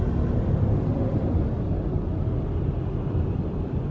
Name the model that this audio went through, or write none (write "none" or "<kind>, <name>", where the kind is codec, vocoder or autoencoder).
none